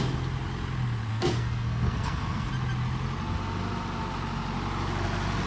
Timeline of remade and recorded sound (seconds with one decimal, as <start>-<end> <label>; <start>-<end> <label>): 0.0-1.1 recorded; 1.1-2.5 remade; 2.5-5.5 recorded